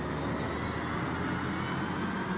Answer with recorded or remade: recorded